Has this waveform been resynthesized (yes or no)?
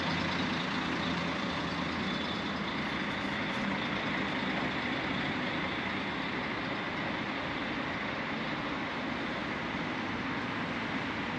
no